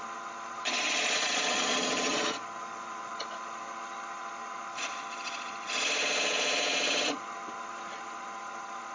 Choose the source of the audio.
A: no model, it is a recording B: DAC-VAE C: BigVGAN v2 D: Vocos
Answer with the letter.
D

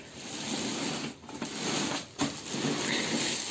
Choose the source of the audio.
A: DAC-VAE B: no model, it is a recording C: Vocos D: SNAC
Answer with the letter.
B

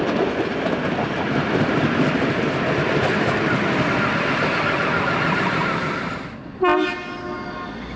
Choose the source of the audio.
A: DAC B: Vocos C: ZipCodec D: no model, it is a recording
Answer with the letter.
D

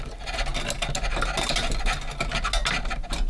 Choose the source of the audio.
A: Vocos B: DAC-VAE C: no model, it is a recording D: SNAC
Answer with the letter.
C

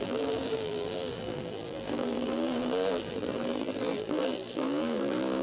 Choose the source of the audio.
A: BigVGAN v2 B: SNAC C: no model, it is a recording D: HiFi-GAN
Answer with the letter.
A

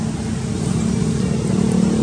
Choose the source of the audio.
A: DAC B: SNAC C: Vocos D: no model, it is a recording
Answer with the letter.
D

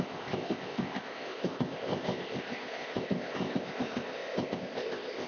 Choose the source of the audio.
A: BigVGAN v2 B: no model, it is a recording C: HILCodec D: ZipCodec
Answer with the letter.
D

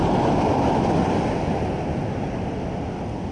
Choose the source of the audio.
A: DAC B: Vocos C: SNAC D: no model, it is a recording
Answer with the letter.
D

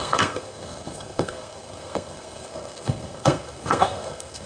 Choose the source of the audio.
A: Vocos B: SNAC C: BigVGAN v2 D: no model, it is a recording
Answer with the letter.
B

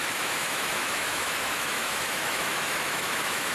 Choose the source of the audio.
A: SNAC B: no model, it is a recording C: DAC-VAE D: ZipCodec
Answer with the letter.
C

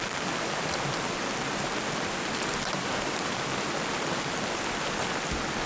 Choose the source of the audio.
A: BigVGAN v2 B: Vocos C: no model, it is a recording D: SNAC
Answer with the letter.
C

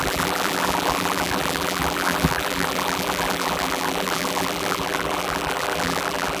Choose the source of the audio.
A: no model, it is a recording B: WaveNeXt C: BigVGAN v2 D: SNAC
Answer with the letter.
C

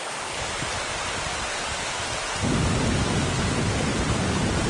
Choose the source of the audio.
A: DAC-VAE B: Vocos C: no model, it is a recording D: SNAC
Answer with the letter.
C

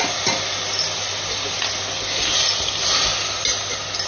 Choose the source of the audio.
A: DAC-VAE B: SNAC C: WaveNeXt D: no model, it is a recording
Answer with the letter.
D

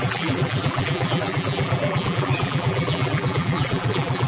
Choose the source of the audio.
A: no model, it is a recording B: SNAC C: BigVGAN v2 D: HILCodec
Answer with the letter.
C